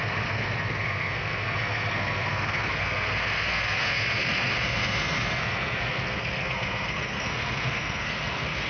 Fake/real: fake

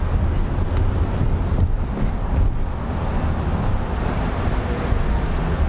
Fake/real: real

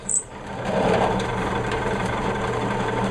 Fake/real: fake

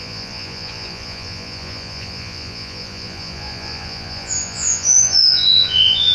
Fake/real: fake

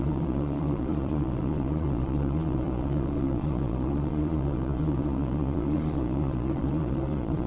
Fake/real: fake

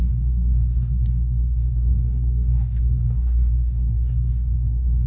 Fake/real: fake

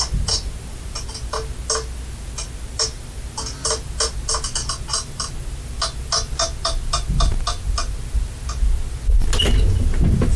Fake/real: real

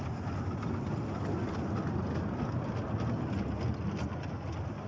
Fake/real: real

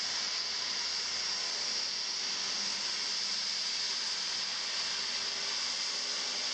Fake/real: real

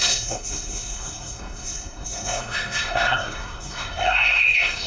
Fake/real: fake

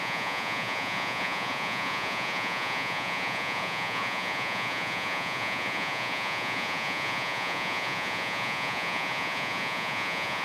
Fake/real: fake